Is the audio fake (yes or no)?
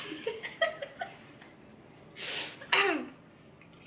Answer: no